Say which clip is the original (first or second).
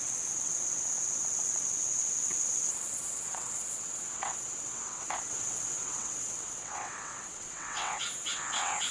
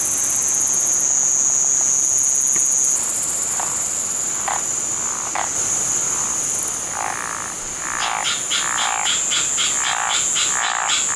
second